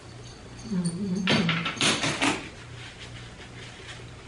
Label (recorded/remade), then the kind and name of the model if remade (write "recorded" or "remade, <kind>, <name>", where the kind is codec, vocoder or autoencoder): recorded